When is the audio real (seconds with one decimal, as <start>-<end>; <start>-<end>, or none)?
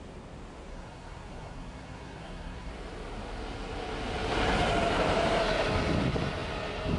0.0-0.7; 2.7-7.0